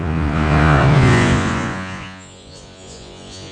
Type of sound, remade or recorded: remade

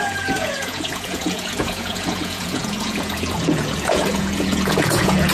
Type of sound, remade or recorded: remade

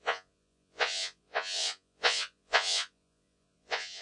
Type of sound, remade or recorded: remade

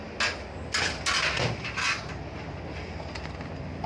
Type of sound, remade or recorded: recorded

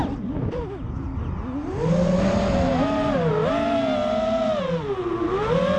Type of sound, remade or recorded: recorded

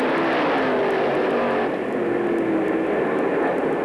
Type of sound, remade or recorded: recorded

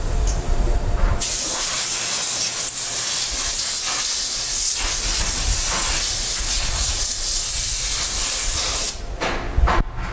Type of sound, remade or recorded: recorded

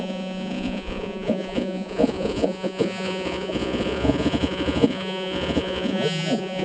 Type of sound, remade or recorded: remade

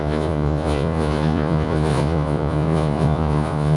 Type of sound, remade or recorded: remade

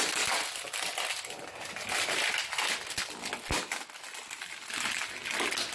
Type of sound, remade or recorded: recorded